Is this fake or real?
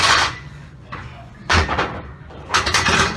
fake